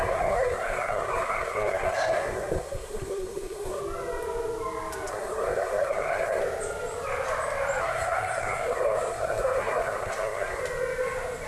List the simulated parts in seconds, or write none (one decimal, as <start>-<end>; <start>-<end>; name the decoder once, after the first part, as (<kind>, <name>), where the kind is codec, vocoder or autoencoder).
0.0-3.8 (codec, SNAC); 5.1-6.4; 7.8-10.6